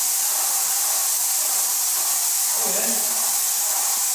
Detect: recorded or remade recorded